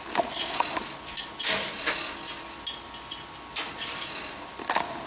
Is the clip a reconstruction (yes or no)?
no